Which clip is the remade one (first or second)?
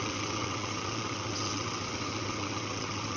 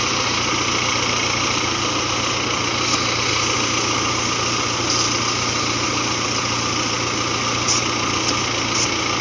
first